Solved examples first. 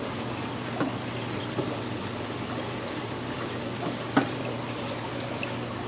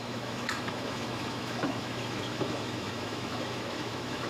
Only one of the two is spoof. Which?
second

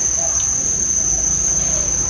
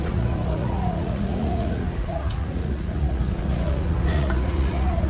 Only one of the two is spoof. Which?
second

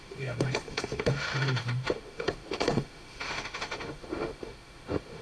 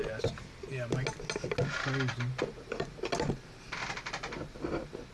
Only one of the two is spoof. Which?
first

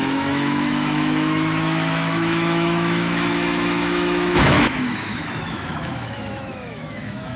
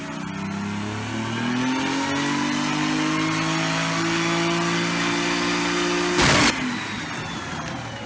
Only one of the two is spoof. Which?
first